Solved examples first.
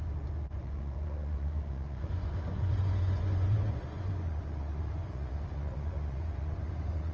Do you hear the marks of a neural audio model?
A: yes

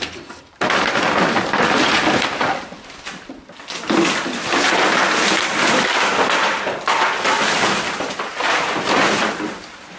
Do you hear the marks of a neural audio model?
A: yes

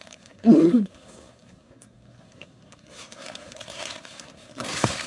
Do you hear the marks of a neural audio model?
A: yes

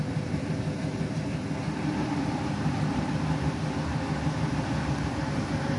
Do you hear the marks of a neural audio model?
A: yes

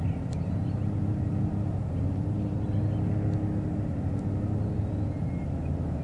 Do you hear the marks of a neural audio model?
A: no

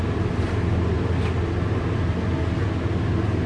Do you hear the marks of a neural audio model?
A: no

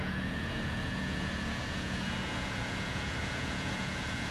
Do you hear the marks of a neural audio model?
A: yes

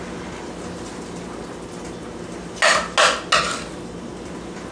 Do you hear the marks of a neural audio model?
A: no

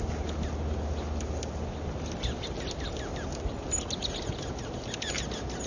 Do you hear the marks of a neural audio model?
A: no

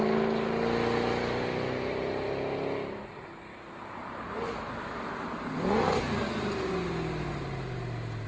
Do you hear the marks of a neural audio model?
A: no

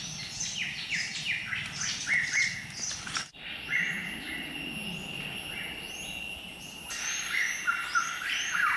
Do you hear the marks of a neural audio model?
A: no